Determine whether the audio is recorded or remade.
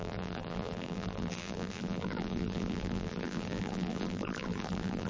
remade